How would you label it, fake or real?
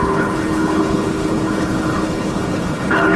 fake